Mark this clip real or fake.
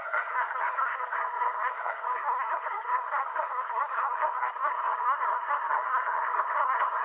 fake